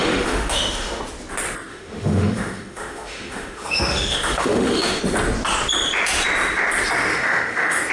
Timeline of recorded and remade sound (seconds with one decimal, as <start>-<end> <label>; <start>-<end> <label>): 0.0-1.0 remade; 1.0-1.7 recorded; 1.7-5.0 remade; 5.0-7.1 recorded; 7.1-7.9 remade

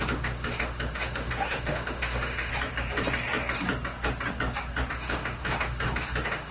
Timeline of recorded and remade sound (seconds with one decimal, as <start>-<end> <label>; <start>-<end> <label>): 0.0-2.5 remade; 2.5-4.9 recorded; 4.9-6.5 remade

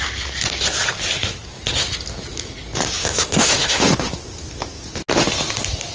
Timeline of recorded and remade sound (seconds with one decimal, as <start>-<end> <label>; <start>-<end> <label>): 0.0-3.0 recorded; 3.0-3.8 remade; 3.8-5.9 recorded

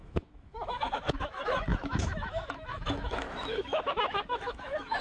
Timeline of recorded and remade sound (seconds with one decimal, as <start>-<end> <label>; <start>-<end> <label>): 0.0-5.0 remade

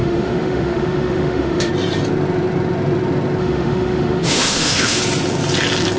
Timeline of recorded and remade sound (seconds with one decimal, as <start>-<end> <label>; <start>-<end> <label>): 0.0-1.7 remade; 1.7-3.4 recorded; 3.4-5.0 remade; 5.0-6.0 recorded

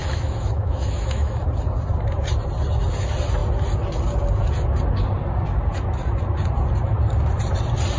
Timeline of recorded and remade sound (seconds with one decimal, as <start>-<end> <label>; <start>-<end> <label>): 0.0-1.4 remade; 1.4-8.0 recorded

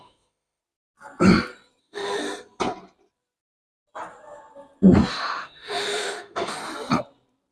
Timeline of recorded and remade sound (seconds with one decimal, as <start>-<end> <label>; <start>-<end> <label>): 0.0-0.6 remade; 0.6-1.8 recorded; 1.8-2.2 remade; 2.2-5.1 recorded; 5.1-6.6 remade; 6.6-7.5 recorded

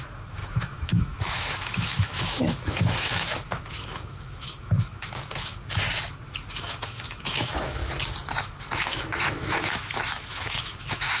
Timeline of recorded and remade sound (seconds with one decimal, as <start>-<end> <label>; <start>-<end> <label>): 0.0-5.6 remade; 5.6-6.6 recorded; 6.6-7.8 remade; 7.8-8.4 recorded; 8.4-11.2 remade